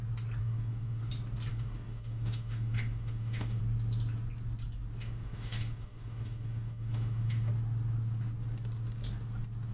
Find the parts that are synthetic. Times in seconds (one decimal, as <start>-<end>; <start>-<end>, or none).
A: 0.4-1.1; 1.5-3.6; 5.0-7.5